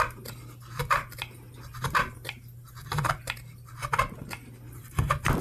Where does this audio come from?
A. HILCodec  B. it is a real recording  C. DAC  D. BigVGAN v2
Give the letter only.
B